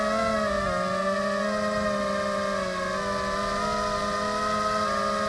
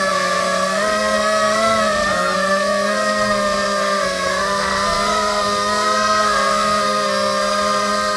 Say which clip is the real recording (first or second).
first